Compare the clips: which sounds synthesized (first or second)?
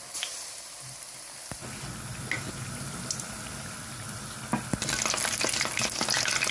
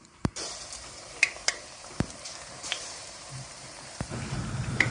second